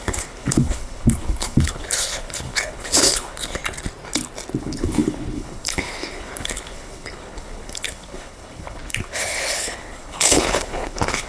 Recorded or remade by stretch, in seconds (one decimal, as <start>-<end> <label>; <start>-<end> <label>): 0.0-3.6 remade; 3.6-4.6 recorded; 4.6-11.3 remade